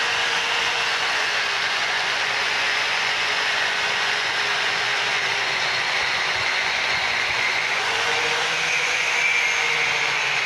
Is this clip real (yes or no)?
no